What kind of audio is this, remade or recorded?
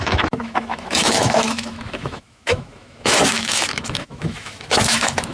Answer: remade